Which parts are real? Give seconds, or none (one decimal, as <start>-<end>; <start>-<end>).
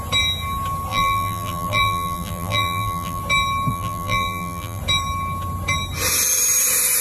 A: 0.0-0.9; 3.2-3.7; 4.8-7.0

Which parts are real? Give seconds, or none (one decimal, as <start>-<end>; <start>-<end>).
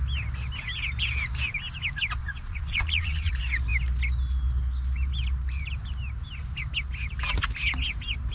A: 0.0-2.2; 3.3-8.3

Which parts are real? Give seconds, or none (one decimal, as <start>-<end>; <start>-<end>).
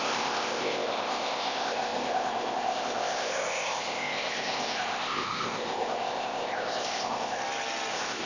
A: 7.4-7.9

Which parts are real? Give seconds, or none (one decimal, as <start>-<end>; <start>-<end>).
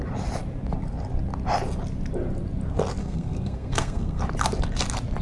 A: 0.0-3.0; 4.2-5.2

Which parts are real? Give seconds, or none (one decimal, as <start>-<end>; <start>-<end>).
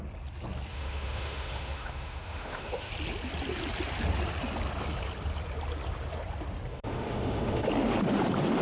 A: 0.0-0.7; 2.9-6.7; 7.7-8.6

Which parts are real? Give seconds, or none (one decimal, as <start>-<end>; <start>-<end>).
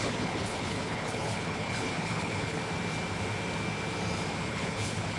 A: 2.6-4.5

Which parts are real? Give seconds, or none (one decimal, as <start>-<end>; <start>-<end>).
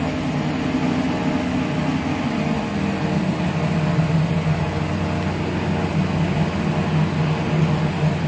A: 0.0-8.3